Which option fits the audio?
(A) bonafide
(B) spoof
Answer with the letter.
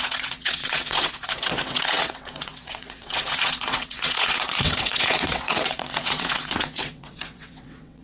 B